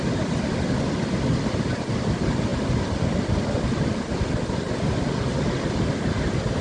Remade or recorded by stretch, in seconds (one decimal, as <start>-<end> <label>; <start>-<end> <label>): 0.0-6.6 recorded